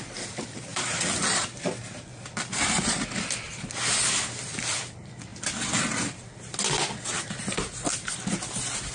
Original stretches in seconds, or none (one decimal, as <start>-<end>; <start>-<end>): 0.0-8.9